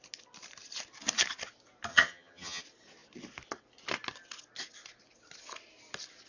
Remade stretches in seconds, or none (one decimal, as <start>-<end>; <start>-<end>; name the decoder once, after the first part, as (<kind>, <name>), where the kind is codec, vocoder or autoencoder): 1.9-2.6 (vocoder, HiFi-GAN)